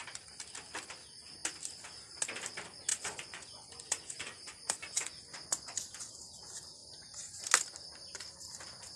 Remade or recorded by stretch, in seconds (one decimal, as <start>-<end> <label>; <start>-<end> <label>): 0.0-2.9 recorded; 2.9-6.1 remade; 6.1-6.8 recorded; 6.8-7.4 remade; 7.4-9.0 recorded